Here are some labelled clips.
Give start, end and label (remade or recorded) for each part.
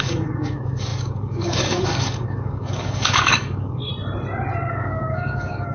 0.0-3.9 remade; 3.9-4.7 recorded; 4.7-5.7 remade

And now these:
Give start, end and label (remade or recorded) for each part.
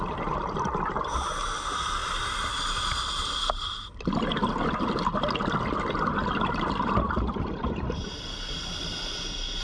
0.0-9.6 recorded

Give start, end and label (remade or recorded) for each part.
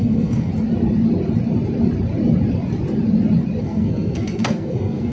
0.0-0.5 remade; 0.5-3.6 recorded; 3.6-5.1 remade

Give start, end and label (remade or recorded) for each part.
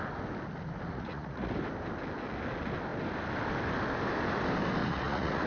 0.0-0.9 recorded; 0.9-1.5 remade; 1.5-4.8 recorded; 4.8-5.5 remade